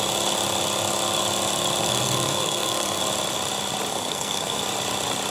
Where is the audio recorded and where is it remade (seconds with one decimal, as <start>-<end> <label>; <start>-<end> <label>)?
0.0-1.8 recorded; 1.8-3.0 remade; 3.0-3.9 recorded; 3.9-4.6 remade; 4.6-5.3 recorded